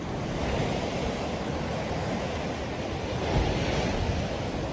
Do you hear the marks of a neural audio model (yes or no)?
no